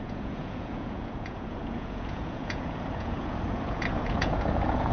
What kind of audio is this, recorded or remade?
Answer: remade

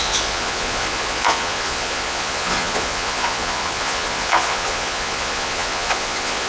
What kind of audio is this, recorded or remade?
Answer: remade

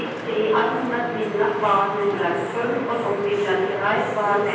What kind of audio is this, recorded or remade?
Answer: recorded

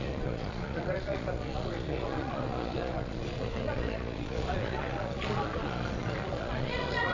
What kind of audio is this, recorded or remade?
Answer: remade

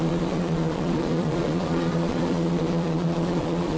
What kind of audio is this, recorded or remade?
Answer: remade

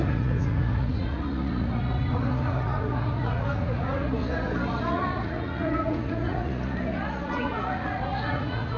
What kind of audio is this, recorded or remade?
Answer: remade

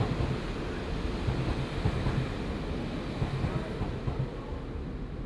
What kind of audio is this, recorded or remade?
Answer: recorded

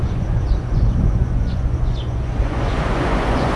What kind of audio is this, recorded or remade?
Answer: remade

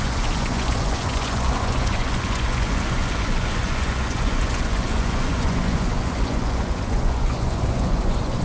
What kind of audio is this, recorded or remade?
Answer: remade